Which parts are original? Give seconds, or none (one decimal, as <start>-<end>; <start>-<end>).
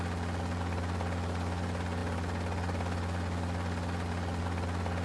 0.0-5.0